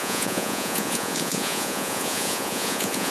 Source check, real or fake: fake